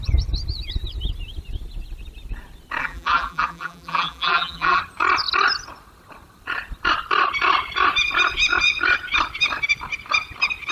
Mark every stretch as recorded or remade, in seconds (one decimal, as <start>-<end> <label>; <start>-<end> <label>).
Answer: 0.0-2.8 recorded; 2.8-4.8 remade; 4.8-10.7 recorded